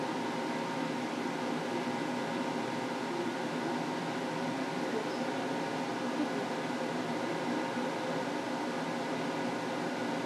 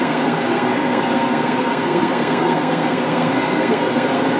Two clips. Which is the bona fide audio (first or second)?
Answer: first